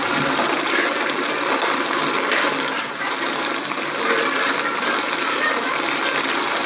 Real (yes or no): yes